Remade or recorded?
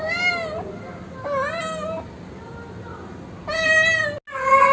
recorded